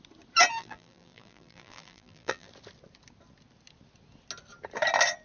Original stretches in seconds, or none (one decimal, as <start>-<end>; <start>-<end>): 0.0-0.6; 2.5-5.2